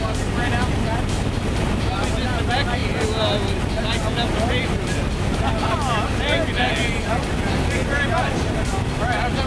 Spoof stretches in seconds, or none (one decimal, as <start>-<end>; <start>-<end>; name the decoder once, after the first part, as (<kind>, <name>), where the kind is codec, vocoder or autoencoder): none